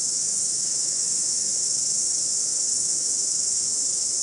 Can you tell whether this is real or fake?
fake